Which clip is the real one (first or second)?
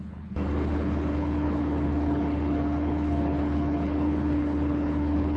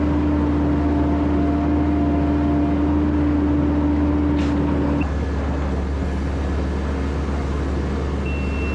second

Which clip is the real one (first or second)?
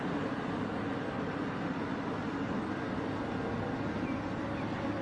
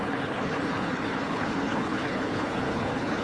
first